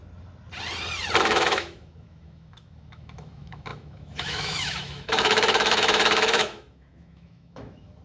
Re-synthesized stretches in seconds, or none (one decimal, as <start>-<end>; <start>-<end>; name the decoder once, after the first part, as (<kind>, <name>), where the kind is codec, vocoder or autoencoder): 1.2-8.0 (autoencoder, DAC-VAE)